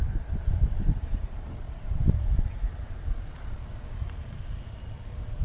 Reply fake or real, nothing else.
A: fake